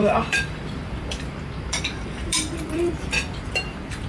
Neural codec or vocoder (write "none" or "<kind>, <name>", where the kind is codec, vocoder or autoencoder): vocoder, BigVGAN v2